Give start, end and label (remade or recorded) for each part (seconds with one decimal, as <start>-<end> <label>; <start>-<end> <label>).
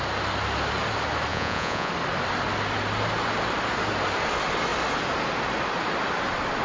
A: 0.0-1.3 recorded; 1.3-1.9 remade; 1.9-6.6 recorded